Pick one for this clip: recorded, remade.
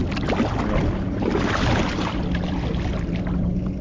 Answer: recorded